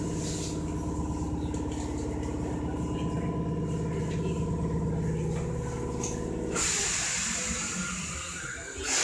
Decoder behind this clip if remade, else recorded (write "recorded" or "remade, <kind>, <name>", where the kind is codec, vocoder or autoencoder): recorded